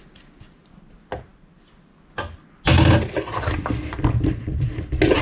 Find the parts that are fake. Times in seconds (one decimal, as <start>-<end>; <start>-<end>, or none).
none